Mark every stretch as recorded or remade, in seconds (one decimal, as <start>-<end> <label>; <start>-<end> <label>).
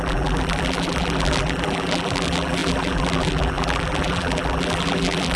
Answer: 0.0-5.4 remade